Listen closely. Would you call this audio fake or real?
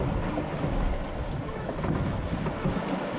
real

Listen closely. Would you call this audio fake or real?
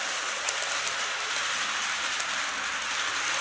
real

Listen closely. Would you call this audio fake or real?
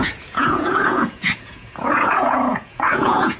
fake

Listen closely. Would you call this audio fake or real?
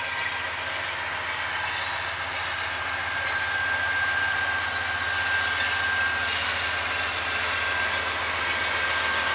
real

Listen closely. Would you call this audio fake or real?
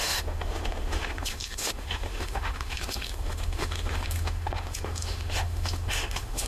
fake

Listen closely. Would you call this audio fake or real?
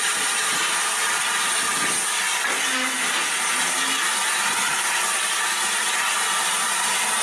real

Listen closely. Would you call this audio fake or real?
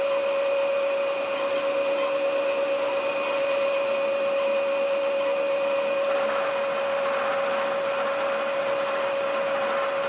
real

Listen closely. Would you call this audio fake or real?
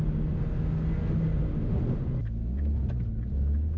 real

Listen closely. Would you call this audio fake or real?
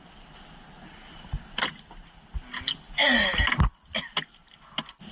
real